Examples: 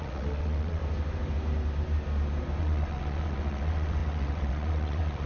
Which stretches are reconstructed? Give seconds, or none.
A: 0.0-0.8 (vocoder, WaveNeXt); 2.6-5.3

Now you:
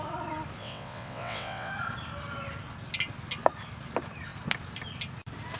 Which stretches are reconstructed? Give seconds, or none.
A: 0.6-1.7 (vocoder, WaveNeXt)